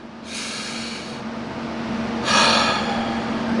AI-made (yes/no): no